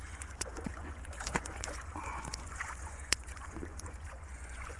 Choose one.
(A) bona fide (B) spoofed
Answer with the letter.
B